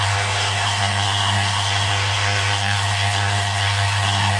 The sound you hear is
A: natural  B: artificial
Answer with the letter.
B